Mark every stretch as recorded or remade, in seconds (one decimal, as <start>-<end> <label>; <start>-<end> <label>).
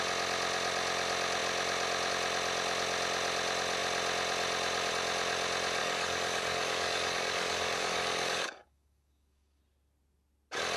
0.0-5.8 recorded; 5.8-9.6 remade; 9.6-10.8 recorded